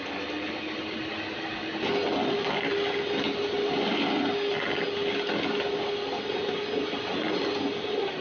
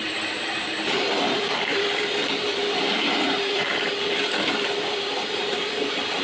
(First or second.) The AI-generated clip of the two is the second